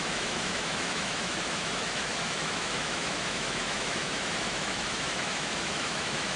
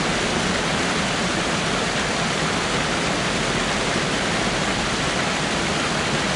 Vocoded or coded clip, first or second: first